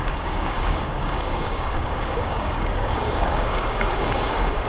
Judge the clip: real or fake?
fake